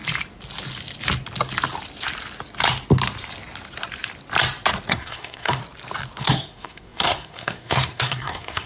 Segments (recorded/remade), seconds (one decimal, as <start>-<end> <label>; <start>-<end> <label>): 0.0-4.9 recorded; 4.9-5.6 remade; 5.6-6.2 recorded; 6.2-8.7 remade